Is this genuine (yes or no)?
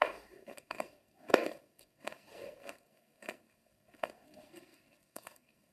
no